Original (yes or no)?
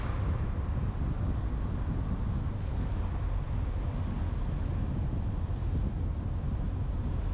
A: yes